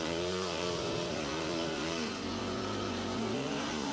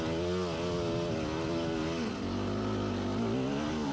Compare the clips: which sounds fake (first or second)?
first